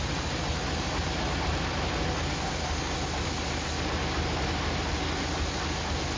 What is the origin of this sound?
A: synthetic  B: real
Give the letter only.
B